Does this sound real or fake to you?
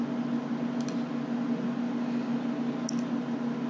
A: real